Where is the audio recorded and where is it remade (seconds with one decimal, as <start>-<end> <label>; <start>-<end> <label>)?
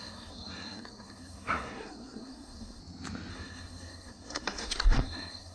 0.0-2.8 remade; 2.8-3.3 recorded; 3.3-5.5 remade